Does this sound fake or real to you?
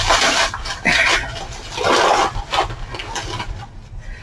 real